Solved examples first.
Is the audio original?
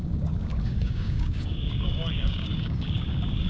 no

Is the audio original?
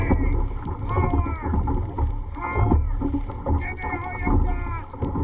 yes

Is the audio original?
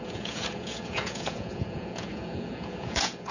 no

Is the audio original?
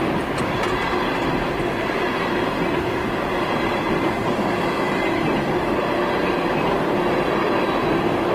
yes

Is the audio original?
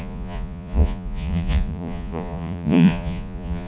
no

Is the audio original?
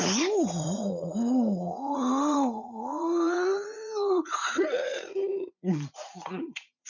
no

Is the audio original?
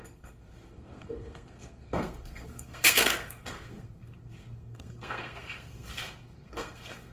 no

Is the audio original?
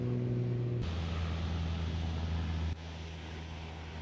yes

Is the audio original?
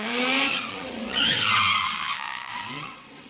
no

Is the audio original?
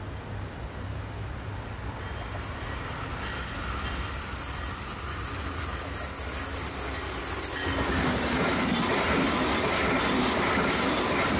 yes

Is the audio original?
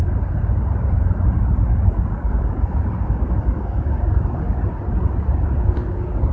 yes